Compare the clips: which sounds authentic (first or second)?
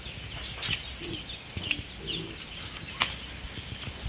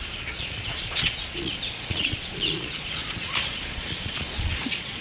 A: first